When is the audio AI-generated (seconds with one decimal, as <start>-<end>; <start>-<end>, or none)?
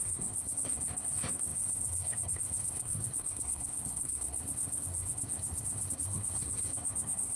0.0-7.4